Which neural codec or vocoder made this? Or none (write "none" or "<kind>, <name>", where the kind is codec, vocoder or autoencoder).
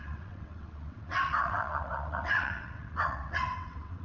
vocoder, WaveNeXt